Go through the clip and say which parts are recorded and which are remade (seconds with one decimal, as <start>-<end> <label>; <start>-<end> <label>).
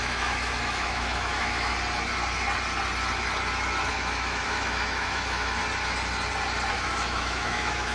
0.0-1.7 remade; 1.7-3.9 recorded; 3.9-5.6 remade; 5.6-6.7 recorded; 6.7-7.9 remade